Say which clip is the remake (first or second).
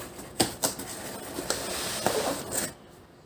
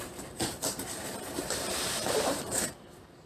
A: second